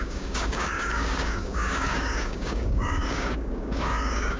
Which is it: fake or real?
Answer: fake